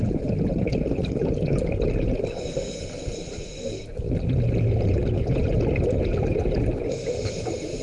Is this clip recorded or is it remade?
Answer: recorded